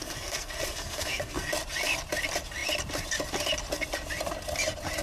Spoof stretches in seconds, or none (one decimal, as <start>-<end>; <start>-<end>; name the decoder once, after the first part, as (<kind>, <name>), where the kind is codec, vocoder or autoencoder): 0.0-1.5 (codec, SNAC)